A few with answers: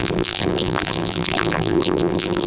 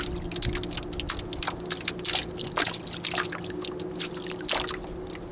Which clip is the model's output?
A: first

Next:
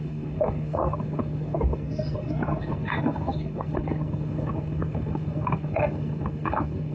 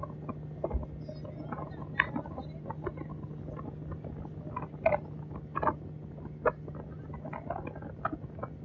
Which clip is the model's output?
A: first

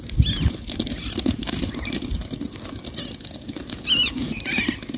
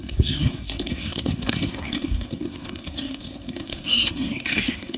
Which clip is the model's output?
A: second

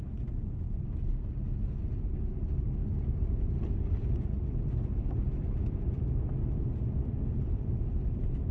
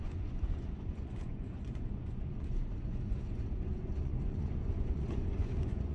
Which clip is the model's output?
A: second